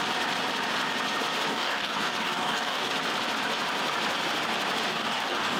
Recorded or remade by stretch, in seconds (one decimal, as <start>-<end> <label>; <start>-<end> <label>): 0.0-1.5 recorded; 1.5-2.9 remade; 2.9-4.9 recorded; 4.9-5.6 remade